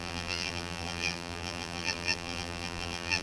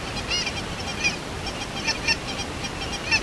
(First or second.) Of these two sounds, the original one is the second